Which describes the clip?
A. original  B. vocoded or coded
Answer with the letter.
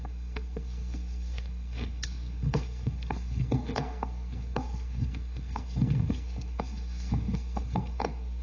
B